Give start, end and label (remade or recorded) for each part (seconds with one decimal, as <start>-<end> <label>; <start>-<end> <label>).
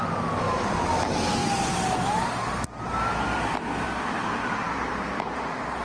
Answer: 0.0-5.8 recorded